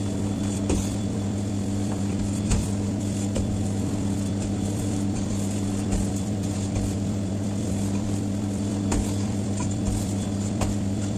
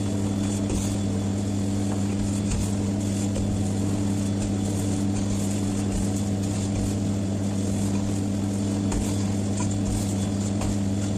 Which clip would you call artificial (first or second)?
first